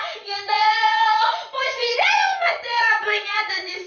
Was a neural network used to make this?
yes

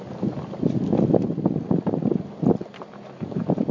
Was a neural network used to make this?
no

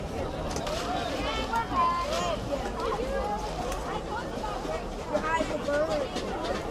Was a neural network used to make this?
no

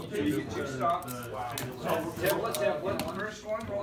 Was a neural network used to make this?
no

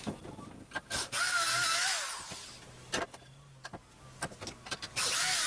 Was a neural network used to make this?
no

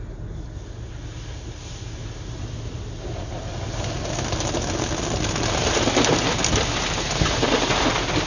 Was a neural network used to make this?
no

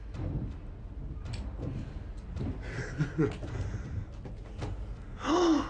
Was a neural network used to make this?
no